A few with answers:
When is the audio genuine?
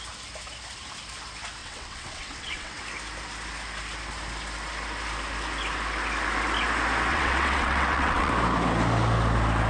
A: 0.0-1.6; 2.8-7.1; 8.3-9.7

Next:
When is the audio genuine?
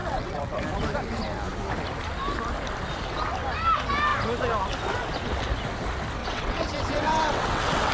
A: 0.6-6.2